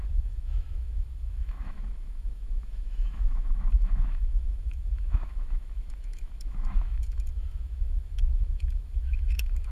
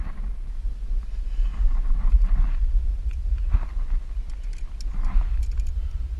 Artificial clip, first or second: first